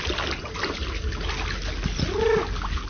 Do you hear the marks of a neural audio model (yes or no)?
no